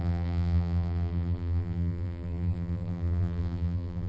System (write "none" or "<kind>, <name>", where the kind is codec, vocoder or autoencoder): vocoder, BigVGAN v2